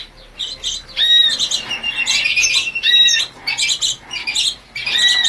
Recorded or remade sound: recorded